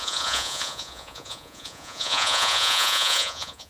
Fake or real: fake